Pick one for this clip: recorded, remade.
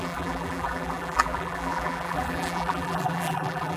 remade